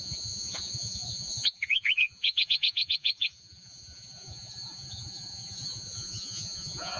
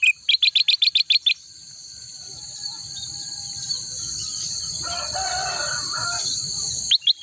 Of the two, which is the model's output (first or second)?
first